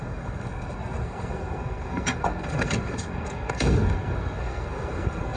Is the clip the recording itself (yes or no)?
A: no